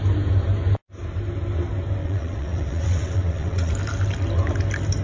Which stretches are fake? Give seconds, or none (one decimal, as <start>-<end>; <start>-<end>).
2.0-3.7